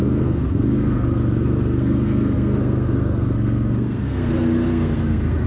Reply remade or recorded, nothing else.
remade